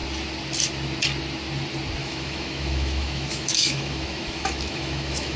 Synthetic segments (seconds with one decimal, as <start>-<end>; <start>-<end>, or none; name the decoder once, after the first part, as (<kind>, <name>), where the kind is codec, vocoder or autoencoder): 2.0-5.4 (autoencoder, DAC-VAE)